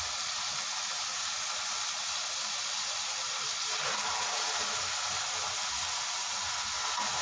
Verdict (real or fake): real